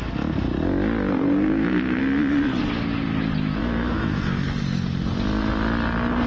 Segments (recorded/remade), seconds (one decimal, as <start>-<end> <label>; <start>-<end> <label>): 0.0-1.1 recorded; 1.1-2.0 remade; 2.0-3.6 recorded; 3.6-4.6 remade; 4.6-6.3 recorded